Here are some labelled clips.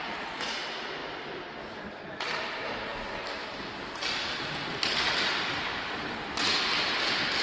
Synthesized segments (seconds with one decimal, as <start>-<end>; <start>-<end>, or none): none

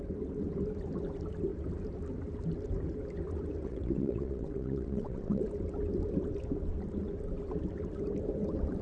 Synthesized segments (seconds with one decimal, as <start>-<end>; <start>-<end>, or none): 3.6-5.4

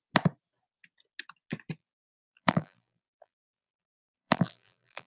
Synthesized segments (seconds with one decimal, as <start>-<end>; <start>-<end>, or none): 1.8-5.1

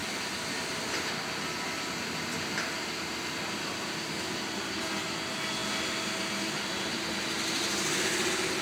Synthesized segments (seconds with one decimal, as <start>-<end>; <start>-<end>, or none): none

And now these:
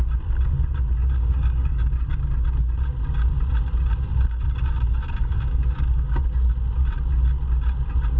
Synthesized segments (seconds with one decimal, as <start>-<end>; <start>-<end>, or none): 1.0-1.9; 5.2-6.2

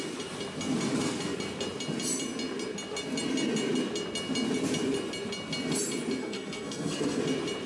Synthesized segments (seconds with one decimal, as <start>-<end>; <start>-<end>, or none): 6.2-7.2